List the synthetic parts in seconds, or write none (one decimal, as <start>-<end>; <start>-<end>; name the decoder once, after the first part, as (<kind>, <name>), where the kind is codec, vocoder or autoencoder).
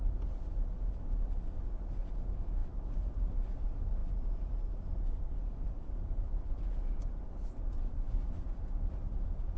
4.0-8.1 (vocoder, BigVGAN v2)